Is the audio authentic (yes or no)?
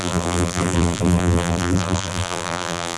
no